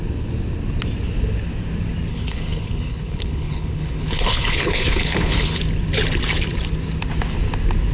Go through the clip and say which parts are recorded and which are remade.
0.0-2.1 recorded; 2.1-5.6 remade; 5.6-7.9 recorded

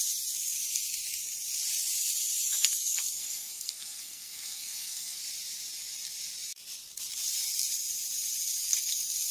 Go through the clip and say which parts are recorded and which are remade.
0.0-2.5 recorded; 2.5-5.2 remade; 5.2-9.3 recorded